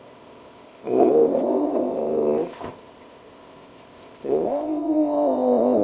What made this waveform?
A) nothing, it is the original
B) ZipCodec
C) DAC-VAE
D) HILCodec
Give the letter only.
B